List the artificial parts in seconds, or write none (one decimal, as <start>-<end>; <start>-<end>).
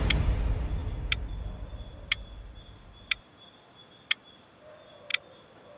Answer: none